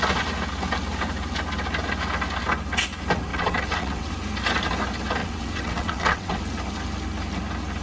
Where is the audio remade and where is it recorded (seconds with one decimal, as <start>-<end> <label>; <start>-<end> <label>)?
0.0-3.3 recorded; 3.3-4.1 remade; 4.1-5.2 recorded; 5.2-6.4 remade; 6.4-7.8 recorded